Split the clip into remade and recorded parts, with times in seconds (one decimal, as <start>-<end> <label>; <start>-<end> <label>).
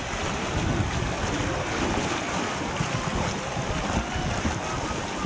0.0-5.3 recorded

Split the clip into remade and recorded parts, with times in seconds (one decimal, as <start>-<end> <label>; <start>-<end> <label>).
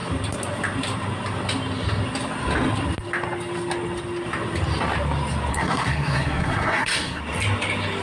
0.0-5.5 recorded; 5.5-7.2 remade; 7.2-8.0 recorded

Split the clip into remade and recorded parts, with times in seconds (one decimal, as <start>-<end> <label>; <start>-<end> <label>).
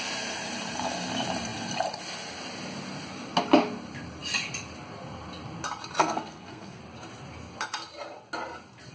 0.0-6.0 recorded; 6.0-6.8 remade; 6.8-8.9 recorded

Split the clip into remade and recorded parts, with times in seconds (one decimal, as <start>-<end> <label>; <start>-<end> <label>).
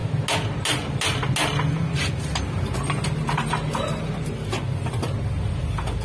0.0-6.0 recorded